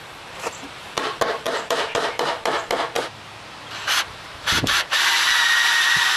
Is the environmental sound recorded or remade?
remade